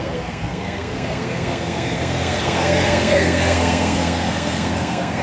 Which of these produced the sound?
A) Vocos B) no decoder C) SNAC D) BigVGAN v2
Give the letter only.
C